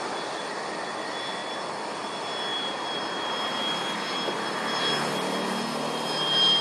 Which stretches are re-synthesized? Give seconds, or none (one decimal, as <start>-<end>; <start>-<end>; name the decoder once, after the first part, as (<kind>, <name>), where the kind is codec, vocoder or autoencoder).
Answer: 2.5-3.3 (vocoder, BigVGAN v2)